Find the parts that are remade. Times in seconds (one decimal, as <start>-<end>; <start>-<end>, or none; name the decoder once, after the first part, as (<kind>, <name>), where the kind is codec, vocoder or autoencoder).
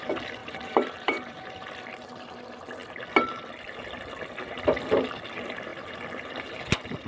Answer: 0.4-1.7 (vocoder, BigVGAN v2)